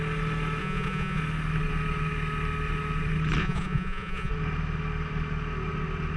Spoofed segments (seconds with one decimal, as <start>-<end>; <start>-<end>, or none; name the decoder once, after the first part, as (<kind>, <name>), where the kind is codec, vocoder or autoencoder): 0.6-1.2 (vocoder, Vocos); 3.4-4.3